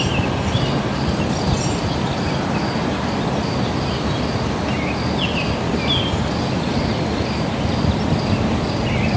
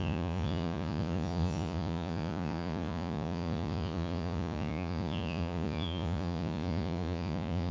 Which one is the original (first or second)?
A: first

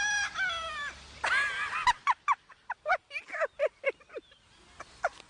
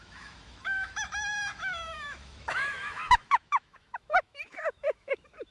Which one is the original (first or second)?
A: first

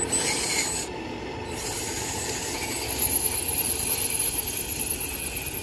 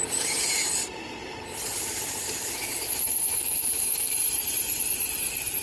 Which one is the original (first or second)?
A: first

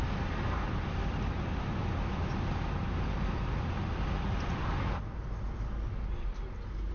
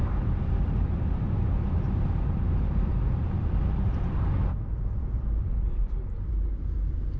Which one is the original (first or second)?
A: first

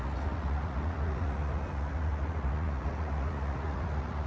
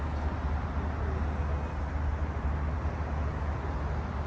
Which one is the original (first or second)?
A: second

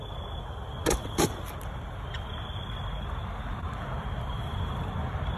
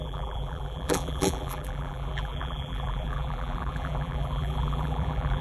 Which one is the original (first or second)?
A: first